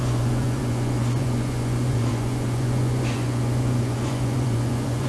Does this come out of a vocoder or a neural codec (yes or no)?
yes